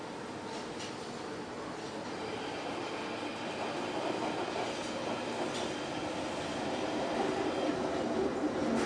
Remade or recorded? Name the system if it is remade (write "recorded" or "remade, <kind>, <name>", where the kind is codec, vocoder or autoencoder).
recorded